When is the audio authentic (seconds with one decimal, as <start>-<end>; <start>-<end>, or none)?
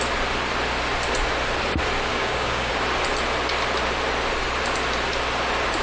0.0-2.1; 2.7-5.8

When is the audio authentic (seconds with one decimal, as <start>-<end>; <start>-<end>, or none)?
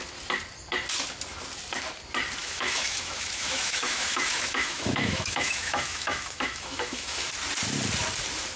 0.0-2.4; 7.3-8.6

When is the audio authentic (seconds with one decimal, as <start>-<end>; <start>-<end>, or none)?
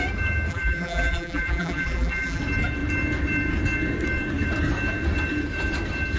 0.0-0.5; 2.4-6.2